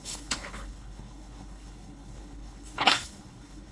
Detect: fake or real fake